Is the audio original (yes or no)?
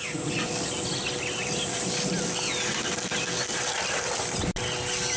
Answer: yes